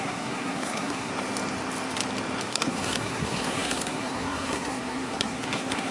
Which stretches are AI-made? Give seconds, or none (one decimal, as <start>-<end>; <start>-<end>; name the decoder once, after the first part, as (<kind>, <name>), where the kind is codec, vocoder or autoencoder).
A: 0.0-1.1 (codec, SNAC); 2.4-5.9